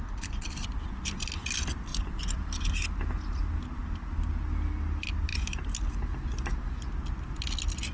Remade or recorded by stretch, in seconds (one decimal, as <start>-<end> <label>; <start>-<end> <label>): 0.0-7.9 recorded